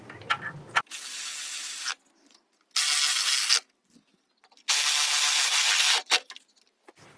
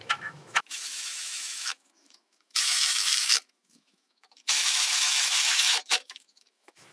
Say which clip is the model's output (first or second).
second